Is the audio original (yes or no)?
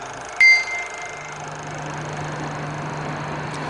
yes